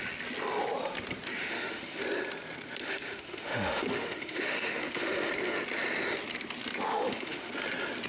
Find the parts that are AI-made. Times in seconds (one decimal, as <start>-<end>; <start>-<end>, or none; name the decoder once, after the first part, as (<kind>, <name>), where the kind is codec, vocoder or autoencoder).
1.4-2.0 (autoencoder, DAC-VAE); 2.8-5.3; 6.9-7.5